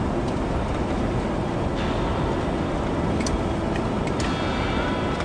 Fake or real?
real